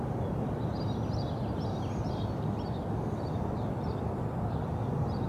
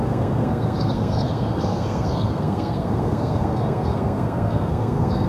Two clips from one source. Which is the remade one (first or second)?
second